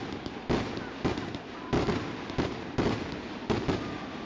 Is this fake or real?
real